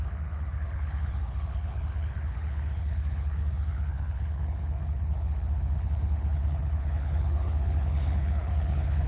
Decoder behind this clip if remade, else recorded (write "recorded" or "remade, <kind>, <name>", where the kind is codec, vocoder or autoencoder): remade, codec, HILCodec